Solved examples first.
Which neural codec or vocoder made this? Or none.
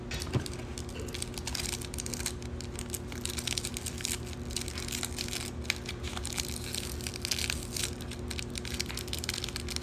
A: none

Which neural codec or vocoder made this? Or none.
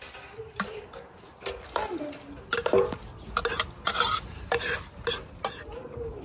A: none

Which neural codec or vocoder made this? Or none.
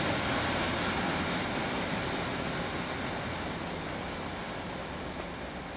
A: none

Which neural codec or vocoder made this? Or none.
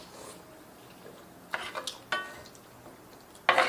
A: none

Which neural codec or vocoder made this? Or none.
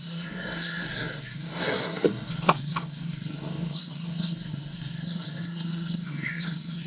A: codec, SNAC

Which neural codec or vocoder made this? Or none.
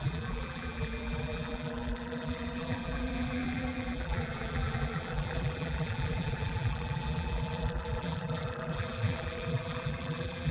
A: vocoder, BigVGAN v2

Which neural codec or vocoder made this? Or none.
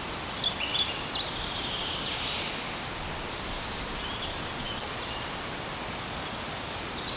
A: none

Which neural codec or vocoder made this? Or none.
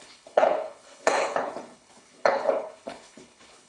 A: codec, HILCodec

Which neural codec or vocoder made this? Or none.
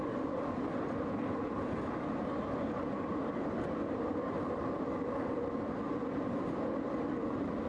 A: vocoder, BigVGAN v2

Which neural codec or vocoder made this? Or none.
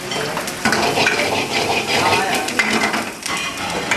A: none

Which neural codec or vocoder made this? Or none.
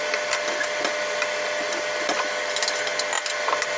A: none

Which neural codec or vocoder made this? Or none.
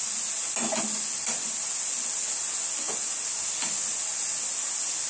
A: none